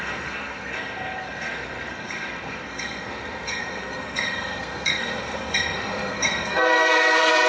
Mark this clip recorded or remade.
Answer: remade